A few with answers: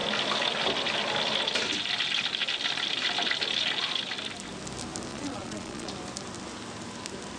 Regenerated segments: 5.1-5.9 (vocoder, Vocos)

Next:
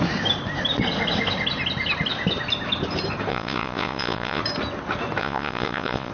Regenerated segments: 3.3-4.4 (vocoder, Vocos); 5.2-6.1